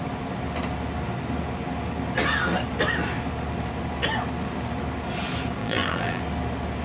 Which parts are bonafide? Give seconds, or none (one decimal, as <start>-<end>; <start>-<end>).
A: 0.0-5.6; 6.2-6.8